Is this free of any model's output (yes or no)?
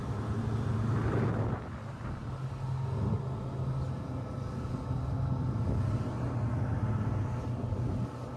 yes